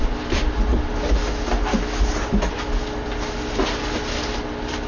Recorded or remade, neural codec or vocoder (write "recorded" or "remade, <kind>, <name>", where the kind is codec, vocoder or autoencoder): recorded